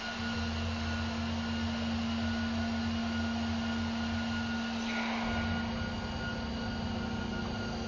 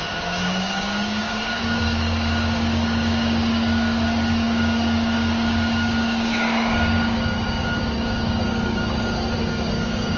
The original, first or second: first